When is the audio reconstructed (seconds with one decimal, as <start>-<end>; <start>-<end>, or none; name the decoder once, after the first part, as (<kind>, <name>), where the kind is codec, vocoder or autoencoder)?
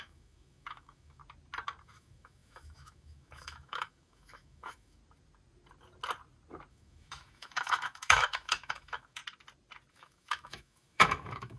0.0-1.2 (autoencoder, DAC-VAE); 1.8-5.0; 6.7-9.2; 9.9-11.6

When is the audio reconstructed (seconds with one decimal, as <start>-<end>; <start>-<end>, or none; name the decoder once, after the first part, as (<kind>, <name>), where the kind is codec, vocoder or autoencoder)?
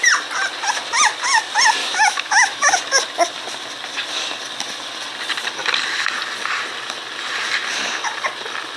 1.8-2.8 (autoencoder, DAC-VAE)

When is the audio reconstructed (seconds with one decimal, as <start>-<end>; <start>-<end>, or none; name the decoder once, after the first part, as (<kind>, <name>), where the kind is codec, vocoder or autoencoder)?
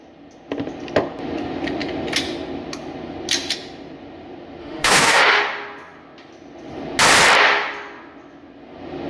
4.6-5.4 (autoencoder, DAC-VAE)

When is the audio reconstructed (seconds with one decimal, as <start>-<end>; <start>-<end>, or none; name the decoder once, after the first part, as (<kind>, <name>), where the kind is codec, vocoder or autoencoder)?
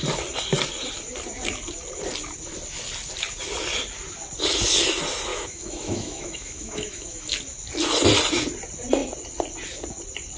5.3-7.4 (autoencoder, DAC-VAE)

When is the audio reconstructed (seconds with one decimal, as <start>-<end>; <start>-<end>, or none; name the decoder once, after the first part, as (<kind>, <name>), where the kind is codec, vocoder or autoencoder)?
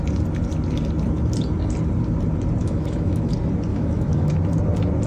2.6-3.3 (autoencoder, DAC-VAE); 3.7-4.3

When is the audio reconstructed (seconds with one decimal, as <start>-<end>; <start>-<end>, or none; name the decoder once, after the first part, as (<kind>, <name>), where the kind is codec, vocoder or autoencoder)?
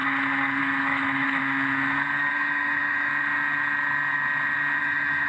0.6-1.4 (autoencoder, DAC-VAE); 2.3-3.1; 4.8-5.3